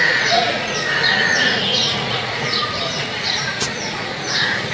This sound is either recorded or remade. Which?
remade